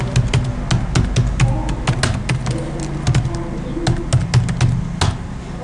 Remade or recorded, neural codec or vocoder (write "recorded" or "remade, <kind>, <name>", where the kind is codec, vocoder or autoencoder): recorded